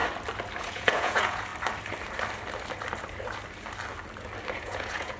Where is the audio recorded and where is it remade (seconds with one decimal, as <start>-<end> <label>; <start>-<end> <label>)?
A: 0.0-0.6 recorded; 0.6-1.5 remade; 1.5-4.6 recorded; 4.6-5.2 remade